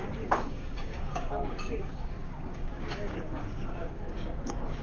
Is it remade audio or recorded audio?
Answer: remade